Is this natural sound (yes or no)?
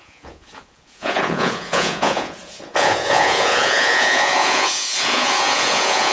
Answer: no